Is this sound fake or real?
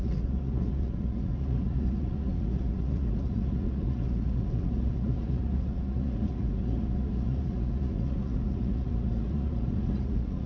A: fake